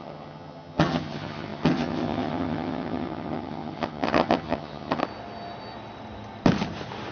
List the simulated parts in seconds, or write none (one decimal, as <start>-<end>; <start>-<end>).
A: 0.0-5.0